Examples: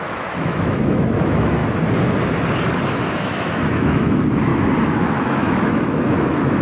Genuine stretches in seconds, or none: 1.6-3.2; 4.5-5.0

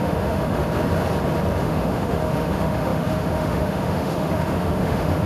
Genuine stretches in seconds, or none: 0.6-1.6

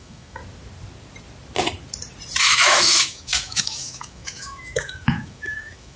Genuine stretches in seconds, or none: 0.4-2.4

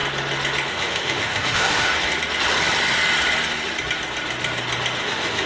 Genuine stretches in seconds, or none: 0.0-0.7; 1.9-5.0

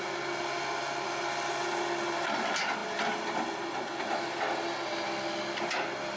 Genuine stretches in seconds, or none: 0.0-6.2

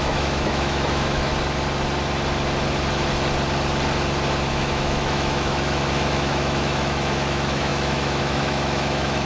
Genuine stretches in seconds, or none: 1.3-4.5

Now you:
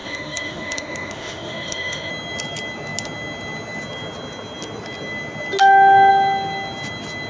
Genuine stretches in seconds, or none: 2.1-7.3

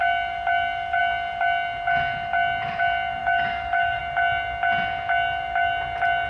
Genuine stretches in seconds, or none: 0.0-3.2; 4.0-6.3